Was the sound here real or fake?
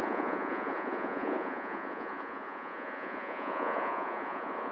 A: fake